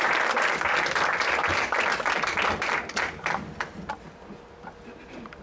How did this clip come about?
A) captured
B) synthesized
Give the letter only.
A